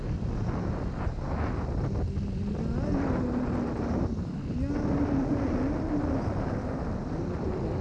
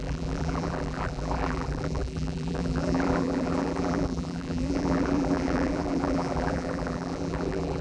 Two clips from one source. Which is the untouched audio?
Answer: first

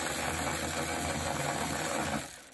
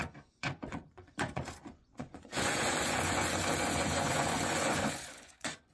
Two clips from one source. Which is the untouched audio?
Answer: first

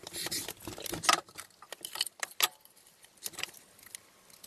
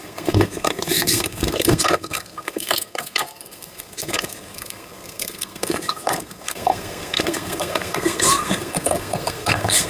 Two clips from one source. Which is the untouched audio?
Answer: first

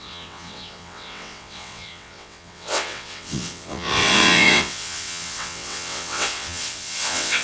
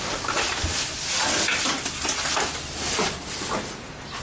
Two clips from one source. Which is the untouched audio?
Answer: second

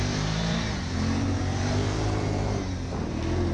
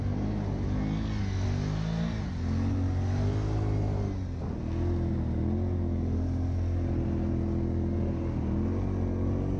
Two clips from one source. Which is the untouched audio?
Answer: second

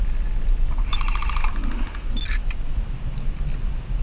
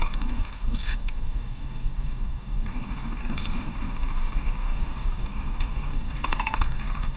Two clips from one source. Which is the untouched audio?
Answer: first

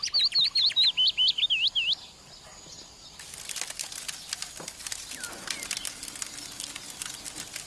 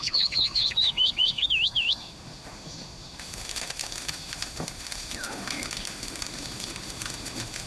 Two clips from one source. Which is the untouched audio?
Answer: first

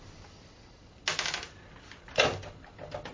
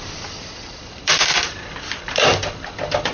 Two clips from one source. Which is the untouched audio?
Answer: first